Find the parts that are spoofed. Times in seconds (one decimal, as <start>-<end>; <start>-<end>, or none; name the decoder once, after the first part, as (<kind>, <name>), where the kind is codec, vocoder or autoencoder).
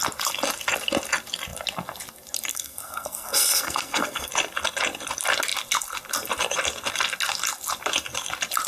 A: 2.5-4.3 (codec, SNAC)